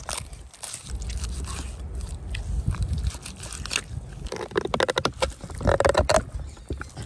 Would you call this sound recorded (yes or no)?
yes